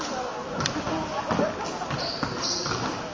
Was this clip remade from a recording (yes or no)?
no